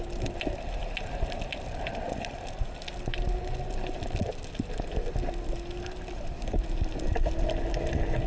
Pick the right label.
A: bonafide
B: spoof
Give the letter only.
A